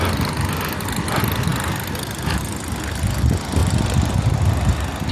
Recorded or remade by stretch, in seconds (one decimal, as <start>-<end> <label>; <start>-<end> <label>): 0.0-5.1 recorded